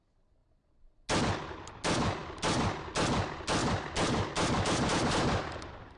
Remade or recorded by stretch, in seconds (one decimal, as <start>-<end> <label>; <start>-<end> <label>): 0.0-6.0 recorded